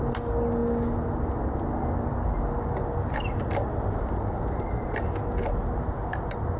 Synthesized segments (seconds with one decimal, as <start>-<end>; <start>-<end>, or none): none